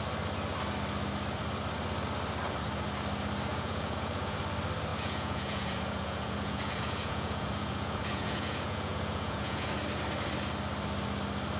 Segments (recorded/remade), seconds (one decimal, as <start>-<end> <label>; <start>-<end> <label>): 0.0-3.5 recorded; 3.5-4.4 remade; 4.4-4.9 recorded; 4.9-9.7 remade; 9.7-11.6 recorded